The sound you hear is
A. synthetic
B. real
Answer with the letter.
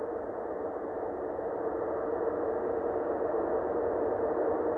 B